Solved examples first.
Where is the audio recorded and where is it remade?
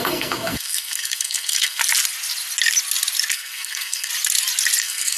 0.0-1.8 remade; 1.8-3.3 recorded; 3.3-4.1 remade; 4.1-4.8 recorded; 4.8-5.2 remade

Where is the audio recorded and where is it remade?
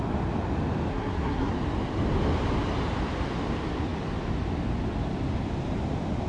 0.0-0.9 recorded; 0.9-1.5 remade; 1.5-6.3 recorded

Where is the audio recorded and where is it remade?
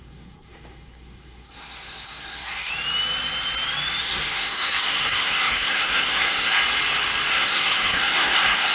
0.0-2.7 remade; 2.7-4.0 recorded; 4.0-6.6 remade; 6.6-7.3 recorded; 7.3-8.7 remade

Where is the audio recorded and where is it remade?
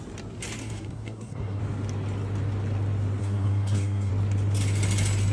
0.0-0.6 recorded; 0.6-1.6 remade; 1.6-3.2 recorded; 3.2-4.1 remade; 4.1-5.3 recorded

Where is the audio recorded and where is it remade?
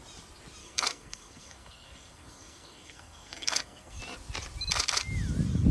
0.0-0.6 recorded; 0.6-4.0 remade; 4.0-5.7 recorded